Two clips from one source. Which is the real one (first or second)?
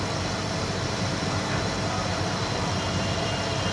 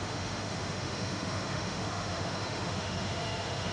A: first